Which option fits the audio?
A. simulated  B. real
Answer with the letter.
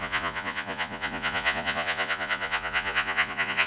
A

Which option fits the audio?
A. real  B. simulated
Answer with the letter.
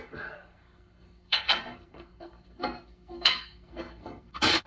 B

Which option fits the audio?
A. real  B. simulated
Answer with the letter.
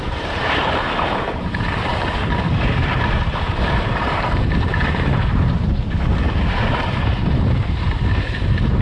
B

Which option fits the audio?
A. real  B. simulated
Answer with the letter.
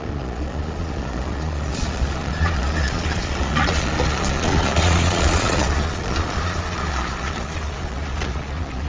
B